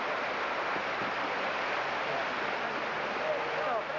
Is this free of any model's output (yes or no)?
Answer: no